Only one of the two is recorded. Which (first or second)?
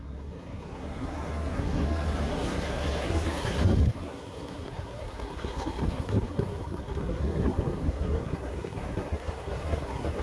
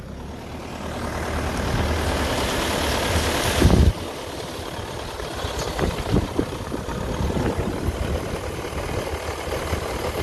second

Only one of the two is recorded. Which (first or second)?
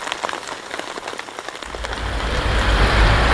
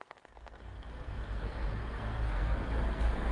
first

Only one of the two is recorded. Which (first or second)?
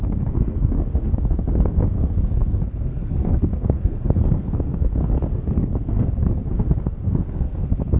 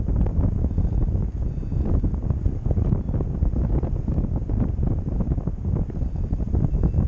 second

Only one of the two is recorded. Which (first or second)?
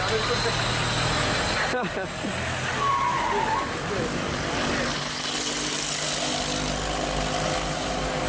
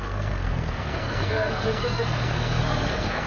first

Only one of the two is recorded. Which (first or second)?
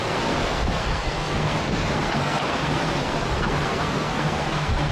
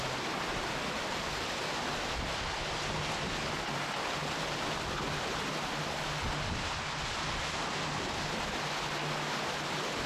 second